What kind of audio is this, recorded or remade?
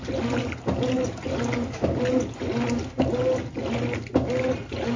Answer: recorded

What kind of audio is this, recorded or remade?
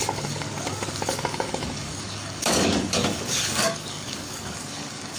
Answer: remade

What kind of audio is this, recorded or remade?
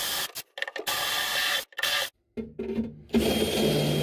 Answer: recorded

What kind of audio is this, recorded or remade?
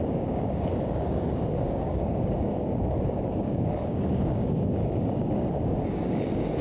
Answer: remade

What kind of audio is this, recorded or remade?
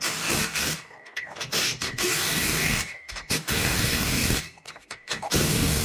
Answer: remade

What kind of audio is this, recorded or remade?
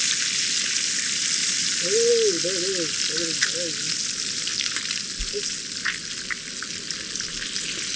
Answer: recorded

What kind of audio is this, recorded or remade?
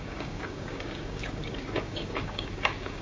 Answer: remade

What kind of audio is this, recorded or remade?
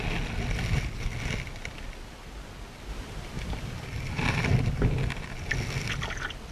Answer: recorded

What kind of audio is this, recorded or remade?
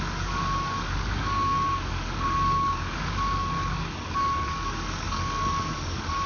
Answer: remade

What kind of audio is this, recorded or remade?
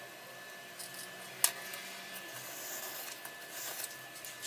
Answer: recorded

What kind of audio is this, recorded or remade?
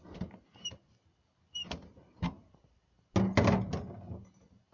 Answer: recorded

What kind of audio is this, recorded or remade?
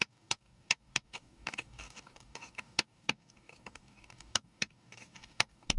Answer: remade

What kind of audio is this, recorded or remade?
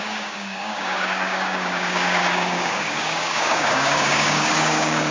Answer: remade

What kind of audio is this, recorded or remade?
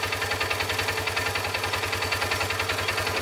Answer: recorded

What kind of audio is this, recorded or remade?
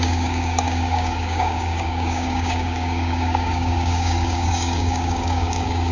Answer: remade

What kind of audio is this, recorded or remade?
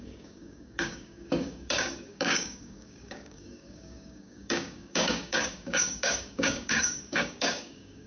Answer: remade